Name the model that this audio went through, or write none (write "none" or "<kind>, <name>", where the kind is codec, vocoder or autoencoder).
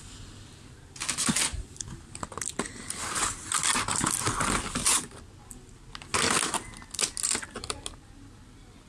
none